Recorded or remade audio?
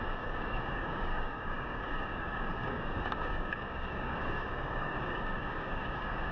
remade